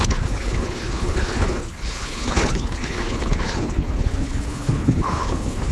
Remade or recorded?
remade